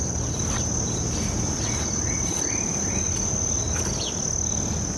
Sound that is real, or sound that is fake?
real